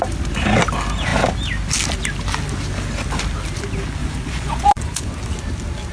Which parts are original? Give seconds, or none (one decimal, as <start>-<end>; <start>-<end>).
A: 0.0-4.0; 5.1-5.9